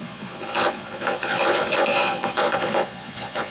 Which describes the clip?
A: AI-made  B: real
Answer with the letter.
A